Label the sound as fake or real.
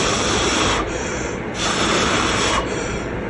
fake